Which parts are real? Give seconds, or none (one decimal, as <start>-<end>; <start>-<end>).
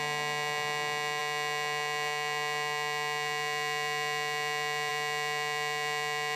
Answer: 0.0-6.4